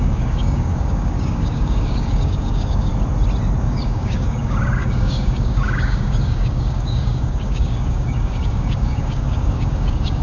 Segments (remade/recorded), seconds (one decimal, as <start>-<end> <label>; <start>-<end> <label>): 0.0-2.9 remade; 2.9-3.6 recorded; 3.6-10.2 remade

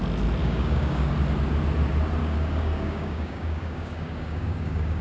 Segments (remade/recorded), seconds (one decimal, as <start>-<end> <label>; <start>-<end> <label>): 0.0-0.4 recorded; 0.4-1.1 remade; 1.1-2.2 recorded; 2.2-5.0 remade

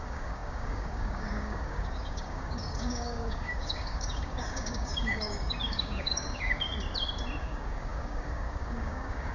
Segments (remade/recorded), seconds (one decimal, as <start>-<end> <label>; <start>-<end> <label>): 0.0-6.7 remade; 6.7-7.4 recorded; 7.4-9.3 remade

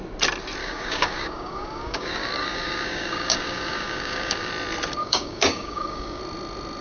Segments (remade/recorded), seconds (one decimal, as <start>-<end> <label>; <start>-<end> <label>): 0.0-0.6 recorded; 0.6-4.5 remade; 4.5-5.0 recorded; 5.0-6.2 remade; 6.2-6.8 recorded

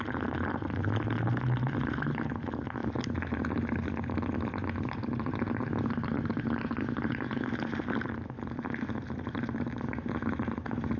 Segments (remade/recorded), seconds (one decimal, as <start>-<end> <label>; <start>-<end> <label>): 0.0-11.0 recorded

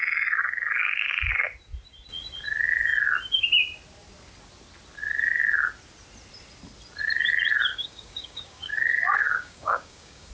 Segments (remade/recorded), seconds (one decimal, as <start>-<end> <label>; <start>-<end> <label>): 0.0-0.8 recorded; 0.8-1.4 remade; 1.4-7.7 recorded; 7.7-10.3 remade

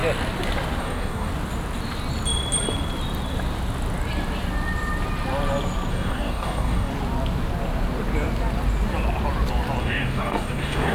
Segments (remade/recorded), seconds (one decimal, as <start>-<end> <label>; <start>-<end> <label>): 0.0-0.8 recorded; 0.8-1.3 remade; 1.3-5.9 recorded; 5.9-6.9 remade; 6.9-9.8 recorded; 9.8-10.9 remade

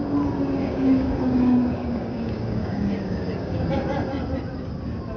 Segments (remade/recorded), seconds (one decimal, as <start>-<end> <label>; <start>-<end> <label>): 0.0-0.6 recorded; 0.6-3.7 remade; 3.7-5.2 recorded